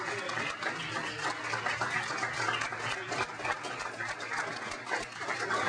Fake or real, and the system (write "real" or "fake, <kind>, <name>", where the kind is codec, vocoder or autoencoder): real